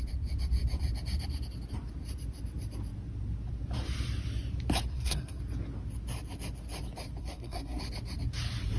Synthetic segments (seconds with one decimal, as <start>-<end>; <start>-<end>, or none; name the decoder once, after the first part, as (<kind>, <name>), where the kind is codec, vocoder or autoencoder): 4.9-5.4 (codec, SNAC); 7.2-7.8

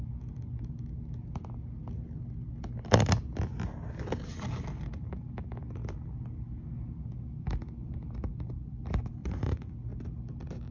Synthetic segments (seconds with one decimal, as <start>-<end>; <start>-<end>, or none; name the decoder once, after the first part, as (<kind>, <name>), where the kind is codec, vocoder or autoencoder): 9.2-9.7 (vocoder, Vocos)

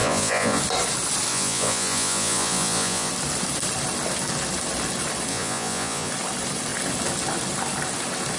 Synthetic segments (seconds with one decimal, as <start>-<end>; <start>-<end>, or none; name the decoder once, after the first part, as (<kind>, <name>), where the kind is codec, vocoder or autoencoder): 0.0-0.6 (vocoder, Vocos); 1.3-3.1; 5.3-6.1

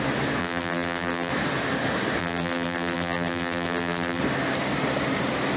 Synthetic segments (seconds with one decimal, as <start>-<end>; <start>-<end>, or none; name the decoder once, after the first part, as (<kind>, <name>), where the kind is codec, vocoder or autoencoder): 0.4-1.3 (vocoder, BigVGAN v2); 2.2-4.2

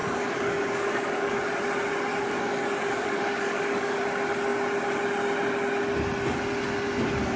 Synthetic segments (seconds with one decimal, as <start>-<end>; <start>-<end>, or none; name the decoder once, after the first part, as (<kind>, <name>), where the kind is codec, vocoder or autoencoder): 0.0-1.4 (codec, DAC); 2.1-4.0

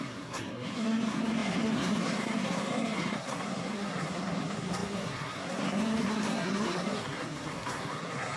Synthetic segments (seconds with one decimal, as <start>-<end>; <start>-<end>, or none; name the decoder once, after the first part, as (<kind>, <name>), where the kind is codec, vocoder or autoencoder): 0.0-8.4 (codec, SNAC)

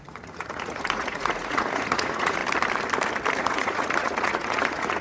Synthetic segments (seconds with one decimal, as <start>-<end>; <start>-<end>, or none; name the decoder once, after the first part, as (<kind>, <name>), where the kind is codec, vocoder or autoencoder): 0.0-2.4 (vocoder, Vocos); 3.4-5.0

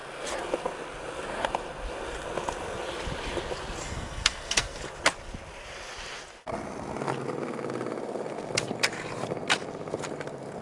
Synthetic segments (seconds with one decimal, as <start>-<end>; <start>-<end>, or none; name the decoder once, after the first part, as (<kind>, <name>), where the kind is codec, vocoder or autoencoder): 3.8-4.8 (codec, SNAC)